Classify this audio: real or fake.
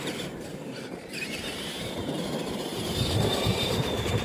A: fake